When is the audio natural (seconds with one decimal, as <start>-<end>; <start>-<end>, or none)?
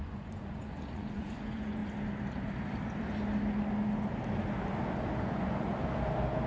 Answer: 1.8-5.2; 5.7-6.5